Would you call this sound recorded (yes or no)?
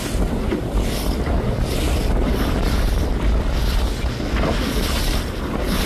yes